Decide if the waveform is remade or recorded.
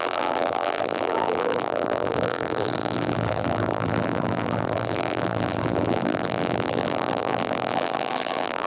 remade